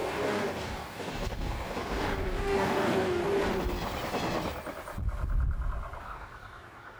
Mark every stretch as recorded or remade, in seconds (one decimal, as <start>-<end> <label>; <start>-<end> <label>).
0.0-3.2 remade; 3.2-6.0 recorded; 6.0-7.0 remade